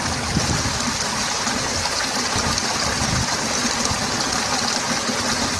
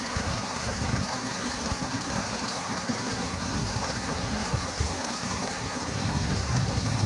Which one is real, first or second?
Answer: first